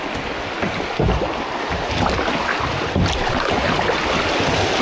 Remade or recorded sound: recorded